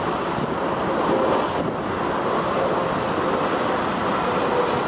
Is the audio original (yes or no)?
yes